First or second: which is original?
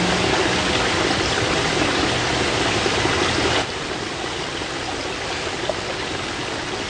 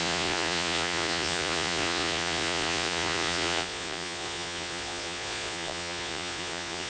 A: first